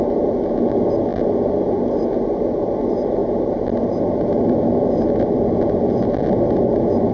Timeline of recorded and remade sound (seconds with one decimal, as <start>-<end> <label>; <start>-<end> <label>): 0.0-7.1 recorded